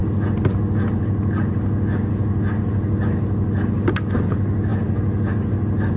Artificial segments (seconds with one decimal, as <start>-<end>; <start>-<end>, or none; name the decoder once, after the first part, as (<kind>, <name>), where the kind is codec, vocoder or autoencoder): none